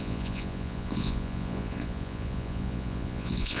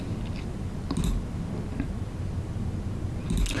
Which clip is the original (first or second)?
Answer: second